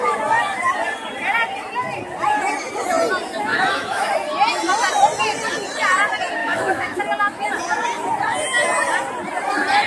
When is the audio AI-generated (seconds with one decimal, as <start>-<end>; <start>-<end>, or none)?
3.5-4.1; 6.4-7.0